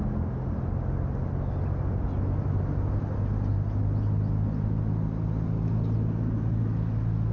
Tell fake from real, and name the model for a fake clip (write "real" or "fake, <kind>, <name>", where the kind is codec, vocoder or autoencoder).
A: real